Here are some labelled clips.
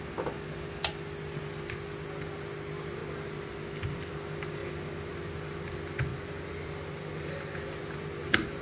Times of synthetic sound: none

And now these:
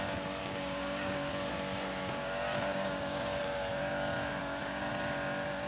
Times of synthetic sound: 0.4-1.3 (codec, DAC); 2.0-3.8; 4.4-4.9

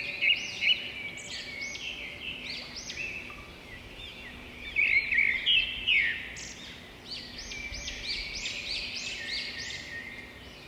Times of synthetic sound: none

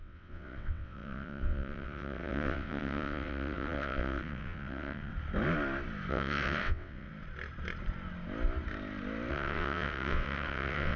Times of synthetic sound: 0.0-5.1 (vocoder, WaveNeXt); 6.1-7.1; 9.3-11.0

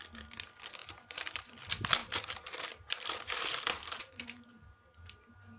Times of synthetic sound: 0.8-1.4 (vocoder, BigVGAN v2); 2.0-4.5

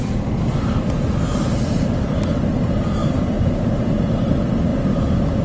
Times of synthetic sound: 1.3-2.2 (vocoder, BigVGAN v2); 3.0-3.5; 4.7-5.4

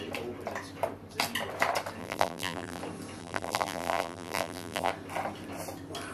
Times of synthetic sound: 2.0-2.8 (vocoder, BigVGAN v2); 3.2-4.9